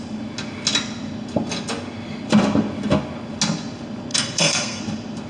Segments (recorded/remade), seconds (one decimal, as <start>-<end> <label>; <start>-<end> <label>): 0.0-4.1 recorded; 4.1-4.8 remade; 4.8-5.3 recorded